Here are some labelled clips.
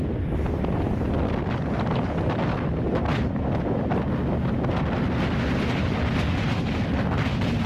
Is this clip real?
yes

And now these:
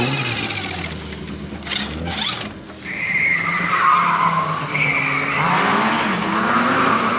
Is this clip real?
yes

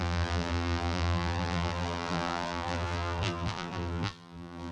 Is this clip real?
no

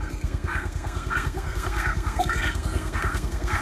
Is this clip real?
no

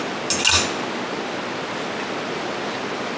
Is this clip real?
yes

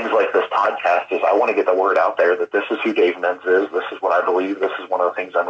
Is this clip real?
yes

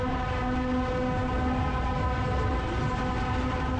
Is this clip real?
yes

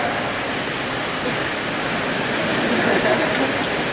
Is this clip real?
yes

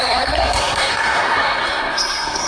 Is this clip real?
no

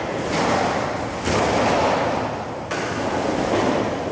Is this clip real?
yes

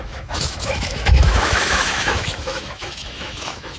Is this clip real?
no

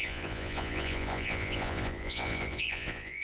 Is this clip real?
no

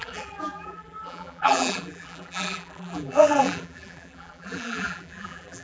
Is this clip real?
no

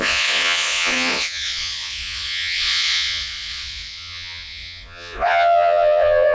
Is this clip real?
no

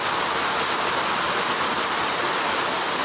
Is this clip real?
yes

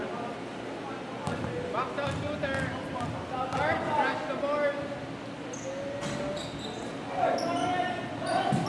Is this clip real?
yes